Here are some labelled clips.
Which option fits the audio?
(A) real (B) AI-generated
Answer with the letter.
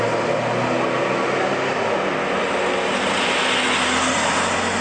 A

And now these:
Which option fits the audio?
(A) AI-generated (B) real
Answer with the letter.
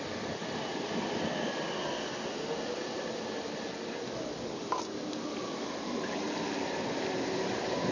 B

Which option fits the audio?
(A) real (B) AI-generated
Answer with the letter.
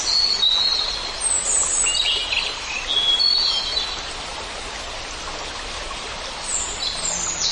A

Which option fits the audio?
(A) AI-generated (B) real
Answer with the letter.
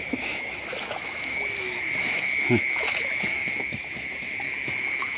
A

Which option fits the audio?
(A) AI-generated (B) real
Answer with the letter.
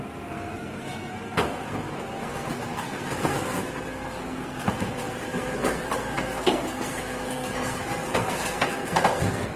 A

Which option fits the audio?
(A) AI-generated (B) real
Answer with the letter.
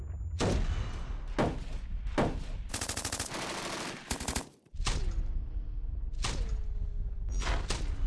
B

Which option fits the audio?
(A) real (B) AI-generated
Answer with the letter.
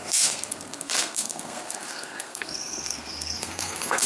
B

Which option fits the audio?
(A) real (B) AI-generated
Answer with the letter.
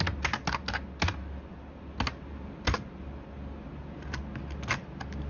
A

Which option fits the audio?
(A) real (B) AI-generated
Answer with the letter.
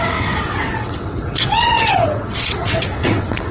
B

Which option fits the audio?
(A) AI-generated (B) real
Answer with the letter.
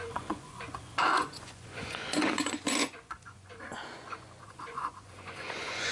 A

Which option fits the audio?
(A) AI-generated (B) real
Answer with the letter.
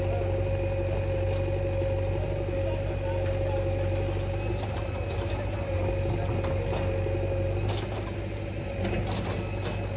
B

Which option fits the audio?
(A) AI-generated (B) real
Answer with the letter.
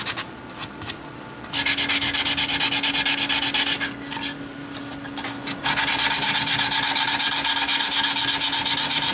B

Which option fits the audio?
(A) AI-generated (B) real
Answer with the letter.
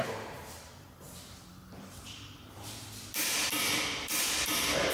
A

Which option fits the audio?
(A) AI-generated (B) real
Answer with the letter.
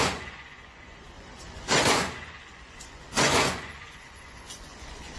A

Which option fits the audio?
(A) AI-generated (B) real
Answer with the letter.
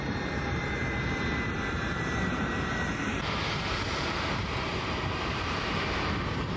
A